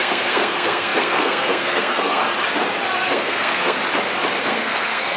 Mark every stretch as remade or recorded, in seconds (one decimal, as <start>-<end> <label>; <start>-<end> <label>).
0.0-2.2 remade; 2.2-3.1 recorded; 3.1-3.8 remade; 3.8-4.4 recorded; 4.4-5.2 remade